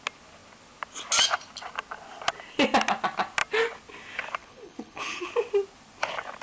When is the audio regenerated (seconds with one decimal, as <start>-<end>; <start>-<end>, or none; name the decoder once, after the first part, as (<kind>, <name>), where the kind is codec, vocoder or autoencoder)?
4.4-5.3 (codec, HILCodec)